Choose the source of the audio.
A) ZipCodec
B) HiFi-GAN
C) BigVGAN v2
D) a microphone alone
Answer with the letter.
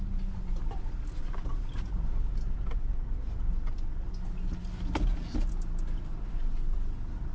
D